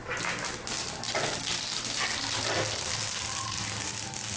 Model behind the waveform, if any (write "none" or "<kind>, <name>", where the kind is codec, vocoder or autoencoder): none